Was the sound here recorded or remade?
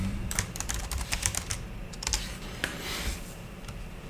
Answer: remade